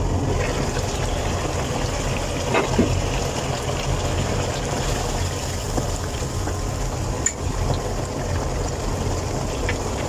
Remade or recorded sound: recorded